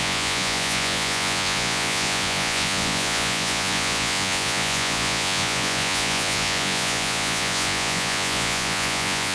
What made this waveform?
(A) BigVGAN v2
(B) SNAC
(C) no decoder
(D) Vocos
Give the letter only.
D